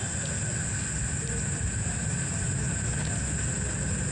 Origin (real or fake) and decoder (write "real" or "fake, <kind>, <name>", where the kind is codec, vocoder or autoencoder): real